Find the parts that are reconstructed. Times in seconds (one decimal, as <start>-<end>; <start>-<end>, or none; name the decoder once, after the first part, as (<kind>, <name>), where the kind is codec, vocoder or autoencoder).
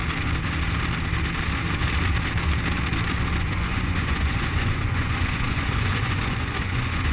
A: 3.4-7.1 (vocoder, Vocos)